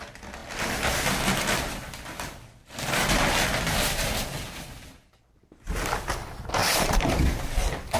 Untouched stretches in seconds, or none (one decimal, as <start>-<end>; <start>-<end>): 0.0-6.6; 7.4-8.0